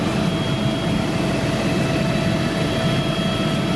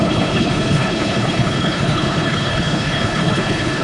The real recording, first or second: first